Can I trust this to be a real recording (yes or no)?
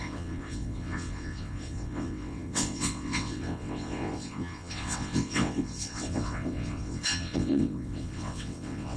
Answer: no